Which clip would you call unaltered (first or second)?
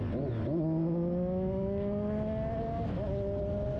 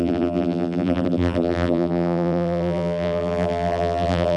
first